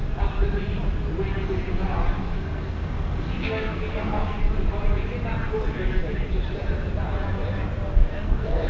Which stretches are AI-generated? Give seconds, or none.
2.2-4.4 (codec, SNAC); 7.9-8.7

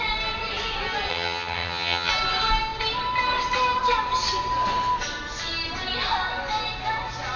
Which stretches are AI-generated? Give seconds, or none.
1.1-2.1 (vocoder, HiFi-GAN)